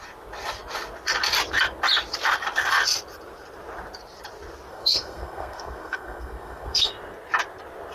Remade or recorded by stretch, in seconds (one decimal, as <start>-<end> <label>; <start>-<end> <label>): 0.0-4.7 recorded; 4.7-6.9 remade; 6.9-7.9 recorded

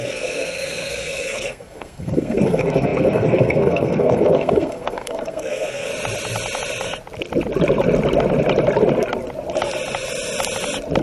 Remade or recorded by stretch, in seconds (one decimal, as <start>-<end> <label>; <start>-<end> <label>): 0.0-5.9 remade; 5.9-11.0 recorded

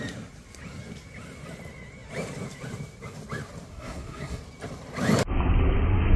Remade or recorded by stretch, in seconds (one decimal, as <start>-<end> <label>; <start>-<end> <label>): 0.0-3.7 recorded; 3.7-4.4 remade; 4.4-6.2 recorded

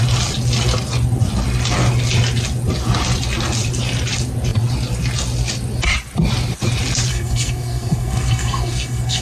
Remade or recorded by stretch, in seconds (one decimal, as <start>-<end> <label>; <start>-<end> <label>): 0.0-7.1 recorded; 7.1-9.2 remade

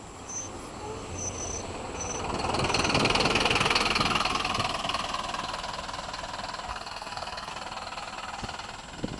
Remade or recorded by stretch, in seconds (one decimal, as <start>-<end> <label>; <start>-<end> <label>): 0.0-6.7 recorded; 6.7-7.5 remade; 7.5-9.2 recorded